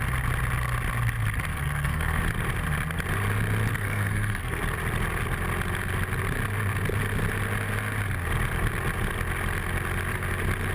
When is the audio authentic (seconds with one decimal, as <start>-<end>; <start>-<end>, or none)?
0.0-1.5; 2.2-3.7; 4.6-10.7